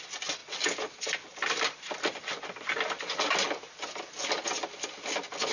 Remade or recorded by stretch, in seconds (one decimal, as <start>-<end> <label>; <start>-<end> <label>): 0.0-5.5 recorded